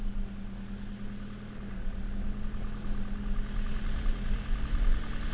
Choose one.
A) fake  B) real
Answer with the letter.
B